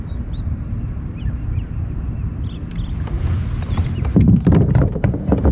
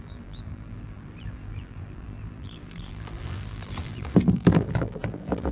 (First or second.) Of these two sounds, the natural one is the first